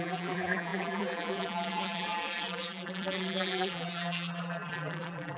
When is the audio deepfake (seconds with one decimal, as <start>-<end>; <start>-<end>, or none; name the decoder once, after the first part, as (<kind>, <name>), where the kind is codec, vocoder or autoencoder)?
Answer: 0.0-5.4 (vocoder, BigVGAN v2)